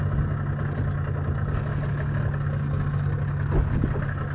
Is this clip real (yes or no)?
yes